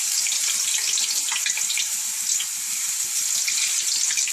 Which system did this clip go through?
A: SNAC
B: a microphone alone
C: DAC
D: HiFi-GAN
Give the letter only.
B